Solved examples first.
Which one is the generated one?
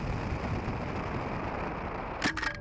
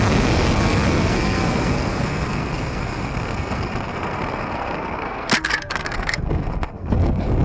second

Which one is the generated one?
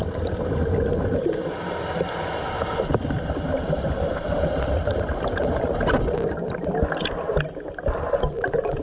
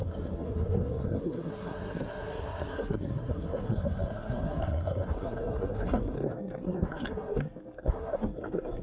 second